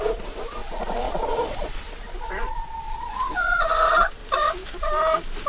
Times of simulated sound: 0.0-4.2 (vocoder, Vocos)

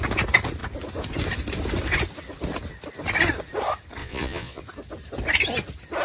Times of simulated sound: 4.0-4.6 (vocoder, Vocos)

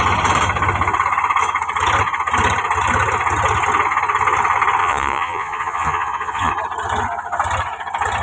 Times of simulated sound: 4.8-6.5 (vocoder, Vocos)

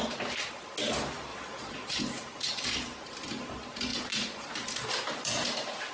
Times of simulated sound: 1.3-2.0 (vocoder, Vocos); 3.9-4.5

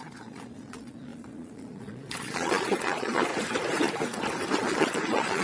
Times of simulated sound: 0.0-3.3 (vocoder, Vocos); 4.6-5.4